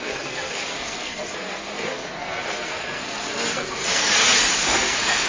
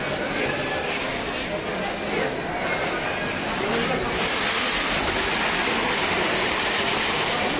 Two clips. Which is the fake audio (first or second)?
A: first